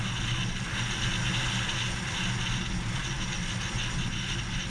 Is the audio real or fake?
real